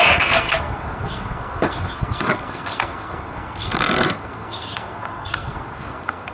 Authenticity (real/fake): fake